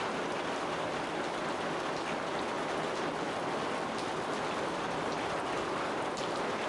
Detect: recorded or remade recorded